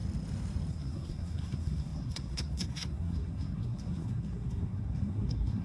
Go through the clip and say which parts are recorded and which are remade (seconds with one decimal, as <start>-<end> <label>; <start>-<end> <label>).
0.0-0.7 recorded; 0.7-5.6 remade